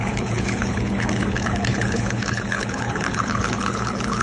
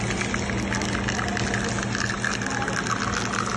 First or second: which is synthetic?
first